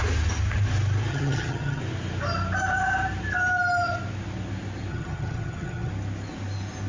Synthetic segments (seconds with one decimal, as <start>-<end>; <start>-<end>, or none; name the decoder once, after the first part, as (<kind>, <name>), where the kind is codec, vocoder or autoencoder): 1.1-1.8 (vocoder, HiFi-GAN); 4.9-5.9